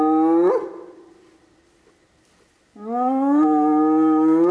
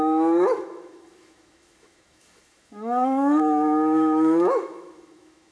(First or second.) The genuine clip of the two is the first